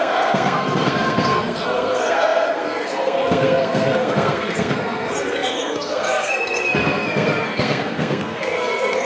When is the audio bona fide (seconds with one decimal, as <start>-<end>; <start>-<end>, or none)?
none